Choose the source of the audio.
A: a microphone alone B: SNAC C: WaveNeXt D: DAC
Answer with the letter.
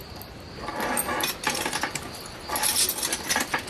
A